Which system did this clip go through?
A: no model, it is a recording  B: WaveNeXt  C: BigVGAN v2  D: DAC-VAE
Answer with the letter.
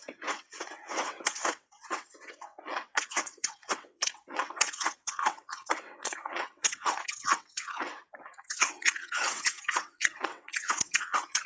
B